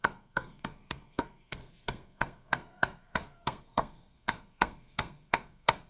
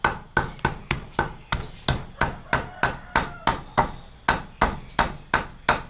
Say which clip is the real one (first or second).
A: second